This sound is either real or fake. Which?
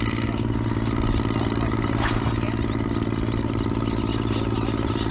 real